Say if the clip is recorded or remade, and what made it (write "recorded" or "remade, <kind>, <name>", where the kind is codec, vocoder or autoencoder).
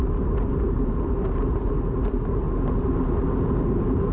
recorded